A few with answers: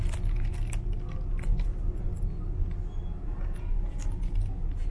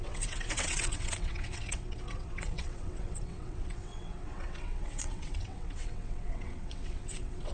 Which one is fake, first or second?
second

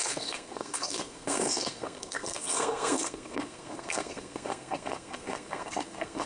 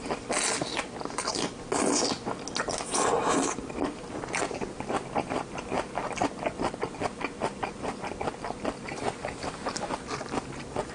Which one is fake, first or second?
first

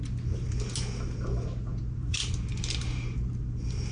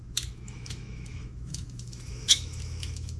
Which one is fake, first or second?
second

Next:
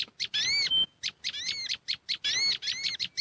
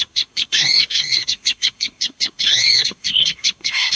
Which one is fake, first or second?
second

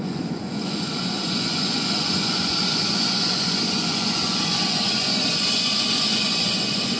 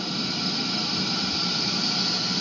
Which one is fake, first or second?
first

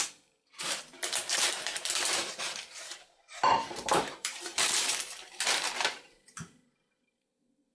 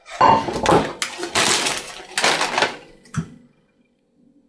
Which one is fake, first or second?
first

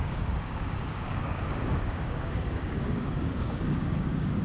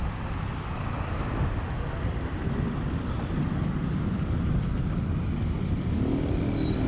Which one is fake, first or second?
first